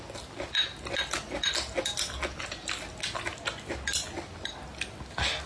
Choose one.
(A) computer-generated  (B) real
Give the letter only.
B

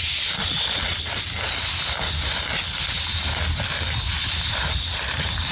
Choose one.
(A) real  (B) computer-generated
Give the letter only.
A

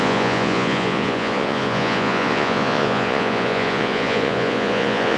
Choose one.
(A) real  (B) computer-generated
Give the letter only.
B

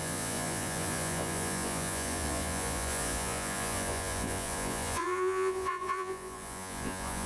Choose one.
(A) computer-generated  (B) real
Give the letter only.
A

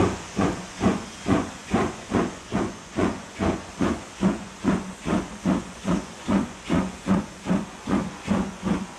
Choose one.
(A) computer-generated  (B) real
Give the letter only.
A